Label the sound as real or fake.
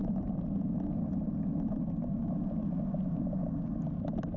real